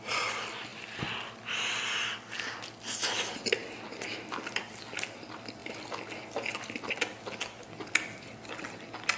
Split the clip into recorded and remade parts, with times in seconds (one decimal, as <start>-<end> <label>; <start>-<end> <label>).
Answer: 0.0-9.2 recorded